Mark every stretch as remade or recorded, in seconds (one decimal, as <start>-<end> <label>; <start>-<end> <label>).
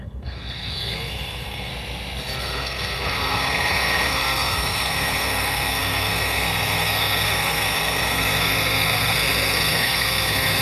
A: 0.0-1.7 remade; 1.7-2.4 recorded; 2.4-10.6 remade